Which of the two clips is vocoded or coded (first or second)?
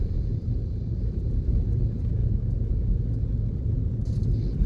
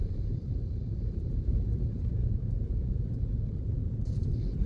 second